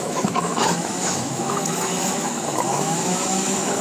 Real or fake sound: fake